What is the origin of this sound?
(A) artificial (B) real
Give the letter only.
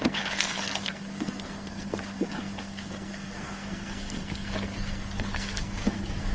A